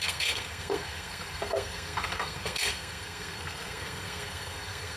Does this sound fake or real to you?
fake